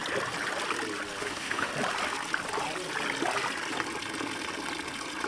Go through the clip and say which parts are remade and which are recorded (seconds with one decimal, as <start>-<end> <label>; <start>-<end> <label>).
0.0-1.2 recorded; 1.2-1.7 remade; 1.7-5.3 recorded